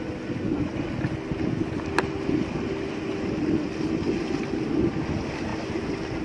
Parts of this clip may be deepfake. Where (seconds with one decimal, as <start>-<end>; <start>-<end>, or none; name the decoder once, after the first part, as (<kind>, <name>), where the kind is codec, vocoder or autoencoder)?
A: none